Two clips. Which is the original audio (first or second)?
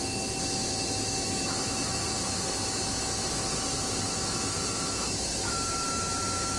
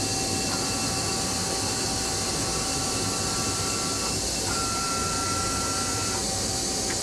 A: second